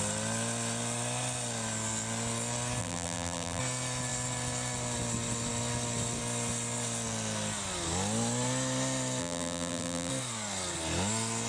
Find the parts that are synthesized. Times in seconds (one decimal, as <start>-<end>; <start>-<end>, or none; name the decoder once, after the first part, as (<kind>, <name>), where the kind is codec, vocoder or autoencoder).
2.8-3.6 (vocoder, BigVGAN v2); 9.2-10.1

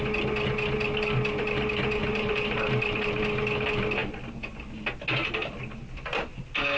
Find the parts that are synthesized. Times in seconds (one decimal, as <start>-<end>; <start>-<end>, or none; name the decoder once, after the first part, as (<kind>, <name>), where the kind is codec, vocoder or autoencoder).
2.0-3.1 (vocoder, BigVGAN v2)

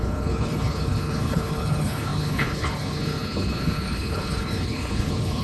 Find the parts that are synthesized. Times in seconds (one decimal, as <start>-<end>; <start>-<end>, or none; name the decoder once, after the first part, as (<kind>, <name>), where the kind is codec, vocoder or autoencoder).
0.0-5.4 (codec, HILCodec)

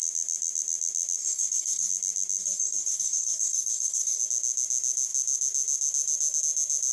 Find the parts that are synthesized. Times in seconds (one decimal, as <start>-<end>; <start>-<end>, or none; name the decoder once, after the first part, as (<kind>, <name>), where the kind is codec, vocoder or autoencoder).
1.2-1.9 (codec, DAC); 2.4-4.2

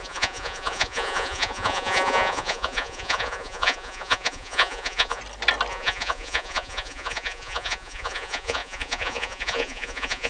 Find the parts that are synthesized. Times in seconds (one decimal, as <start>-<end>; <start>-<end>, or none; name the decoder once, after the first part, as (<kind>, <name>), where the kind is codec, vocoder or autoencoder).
0.0-5.2 (vocoder, Vocos); 5.7-10.3

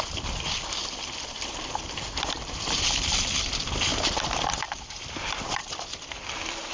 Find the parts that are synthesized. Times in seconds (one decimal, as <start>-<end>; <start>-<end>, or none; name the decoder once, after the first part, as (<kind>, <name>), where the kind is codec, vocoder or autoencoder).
0.8-3.1 (vocoder, BigVGAN v2); 3.9-5.9